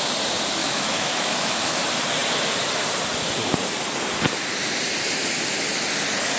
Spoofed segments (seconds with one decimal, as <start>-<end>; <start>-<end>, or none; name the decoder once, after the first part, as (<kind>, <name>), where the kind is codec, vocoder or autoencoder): 0.6-1.8 (autoencoder, DAC-VAE)